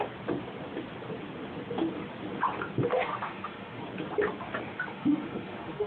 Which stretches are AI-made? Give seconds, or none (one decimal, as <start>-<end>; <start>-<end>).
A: 2.9-3.8; 4.7-5.9

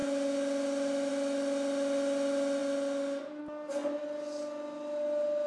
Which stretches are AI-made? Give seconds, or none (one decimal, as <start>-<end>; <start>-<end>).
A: none